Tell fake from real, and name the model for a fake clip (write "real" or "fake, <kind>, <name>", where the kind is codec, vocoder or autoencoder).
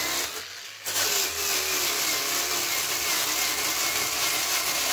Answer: real